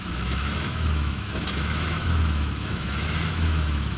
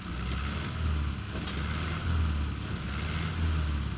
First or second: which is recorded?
second